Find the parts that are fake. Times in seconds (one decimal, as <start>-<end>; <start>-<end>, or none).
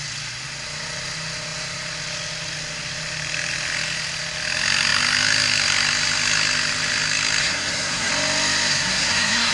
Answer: 7.4-8.1; 8.7-9.5